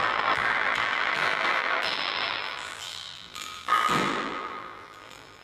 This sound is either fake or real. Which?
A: fake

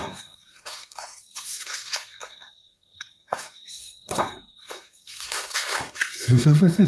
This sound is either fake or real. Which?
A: fake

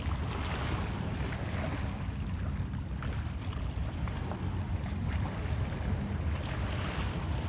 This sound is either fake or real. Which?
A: real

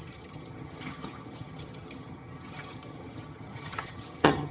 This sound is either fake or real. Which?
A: fake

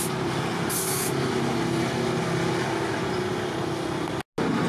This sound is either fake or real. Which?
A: real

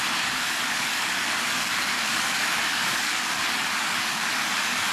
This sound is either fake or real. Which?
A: fake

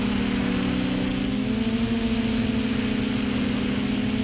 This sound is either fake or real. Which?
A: real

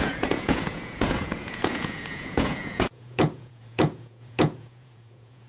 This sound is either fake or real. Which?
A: fake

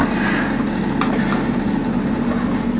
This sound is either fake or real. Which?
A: real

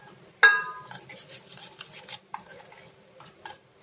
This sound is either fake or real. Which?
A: real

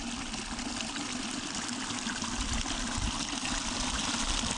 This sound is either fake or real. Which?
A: real